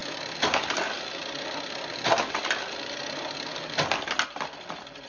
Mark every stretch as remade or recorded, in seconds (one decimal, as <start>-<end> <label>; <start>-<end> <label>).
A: 0.0-5.1 recorded